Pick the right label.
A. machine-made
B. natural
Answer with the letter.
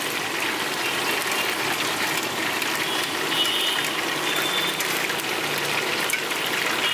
B